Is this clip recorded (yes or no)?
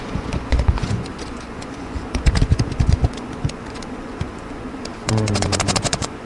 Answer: no